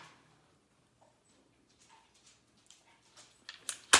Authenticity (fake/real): real